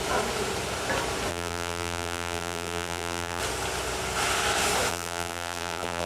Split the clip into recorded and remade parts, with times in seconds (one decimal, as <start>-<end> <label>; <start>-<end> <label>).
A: 0.0-1.3 recorded; 1.3-3.4 remade; 3.4-4.9 recorded; 4.9-6.1 remade